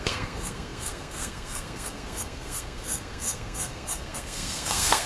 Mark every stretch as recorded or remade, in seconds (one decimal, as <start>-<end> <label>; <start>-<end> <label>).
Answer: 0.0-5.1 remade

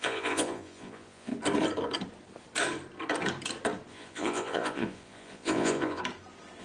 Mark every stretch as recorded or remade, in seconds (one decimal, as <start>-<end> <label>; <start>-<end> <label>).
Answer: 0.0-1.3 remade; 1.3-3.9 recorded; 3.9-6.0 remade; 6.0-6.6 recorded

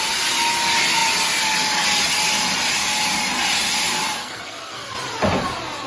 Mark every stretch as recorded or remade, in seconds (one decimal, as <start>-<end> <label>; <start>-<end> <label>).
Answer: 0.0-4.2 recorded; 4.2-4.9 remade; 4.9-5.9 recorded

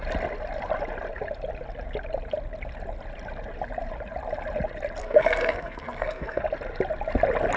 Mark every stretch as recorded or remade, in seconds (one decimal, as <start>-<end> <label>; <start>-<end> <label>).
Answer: 0.0-5.0 recorded; 5.0-6.4 remade; 6.4-7.6 recorded

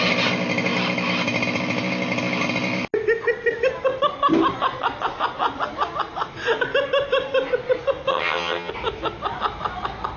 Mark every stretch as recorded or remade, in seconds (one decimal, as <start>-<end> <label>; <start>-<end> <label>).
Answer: 0.0-8.1 recorded; 8.1-8.7 remade; 8.7-10.2 recorded

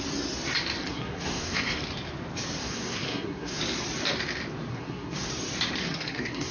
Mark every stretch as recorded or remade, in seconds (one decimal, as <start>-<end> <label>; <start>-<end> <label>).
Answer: 0.0-0.8 recorded; 0.8-1.8 remade; 1.8-2.6 recorded; 2.6-3.6 remade; 3.6-4.7 recorded; 4.7-5.3 remade; 5.3-5.8 recorded; 5.8-6.5 remade